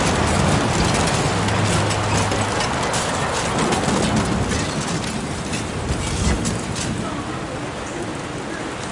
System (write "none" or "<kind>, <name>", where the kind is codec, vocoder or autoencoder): none